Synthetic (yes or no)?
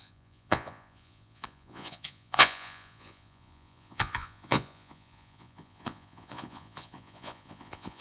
yes